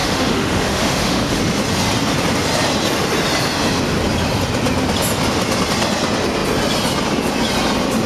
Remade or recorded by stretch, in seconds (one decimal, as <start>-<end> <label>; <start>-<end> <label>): 0.0-1.4 remade; 1.4-8.1 recorded